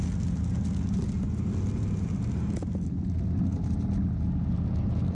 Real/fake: real